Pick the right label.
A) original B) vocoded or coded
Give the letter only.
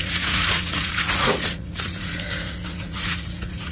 B